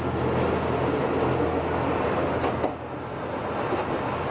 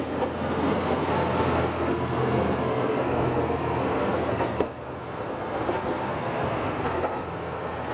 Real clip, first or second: first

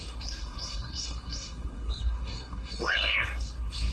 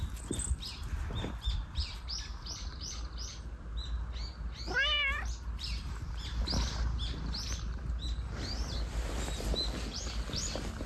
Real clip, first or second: second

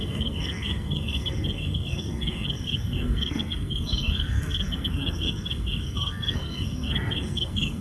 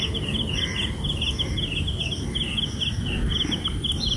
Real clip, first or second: second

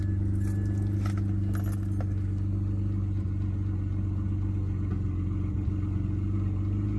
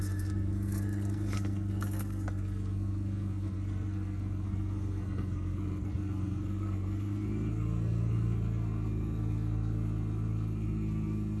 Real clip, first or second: first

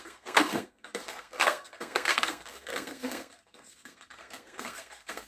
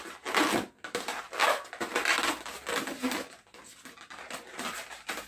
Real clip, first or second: second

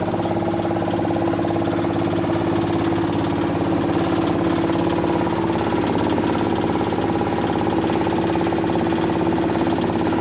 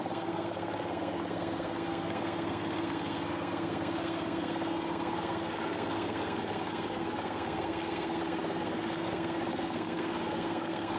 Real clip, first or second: first